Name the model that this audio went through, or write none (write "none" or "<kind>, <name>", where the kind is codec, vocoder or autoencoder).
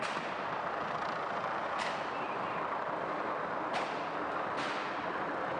none